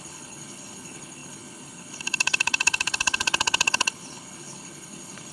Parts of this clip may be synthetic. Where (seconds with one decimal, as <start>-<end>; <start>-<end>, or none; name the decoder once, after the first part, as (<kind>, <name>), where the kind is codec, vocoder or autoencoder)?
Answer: 0.0-5.3 (codec, HILCodec)